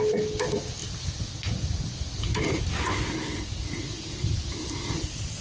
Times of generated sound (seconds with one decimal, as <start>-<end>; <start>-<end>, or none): none